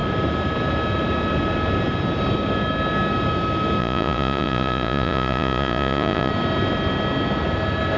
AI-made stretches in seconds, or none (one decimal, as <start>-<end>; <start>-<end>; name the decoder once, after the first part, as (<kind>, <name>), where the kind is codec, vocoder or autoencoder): 3.8-6.3 (vocoder, Vocos)